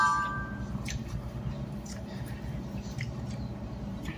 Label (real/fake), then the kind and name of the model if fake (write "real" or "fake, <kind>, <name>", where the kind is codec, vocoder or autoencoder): fake, vocoder, BigVGAN v2